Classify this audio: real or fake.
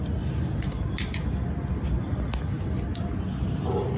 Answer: real